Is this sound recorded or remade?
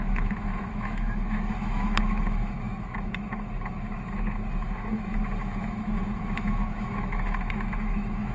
remade